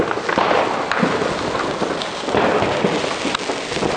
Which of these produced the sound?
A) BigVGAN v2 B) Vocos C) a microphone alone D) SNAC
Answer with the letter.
C